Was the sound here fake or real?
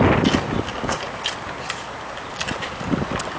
real